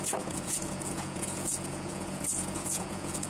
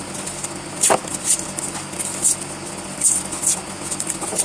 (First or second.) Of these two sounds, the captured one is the second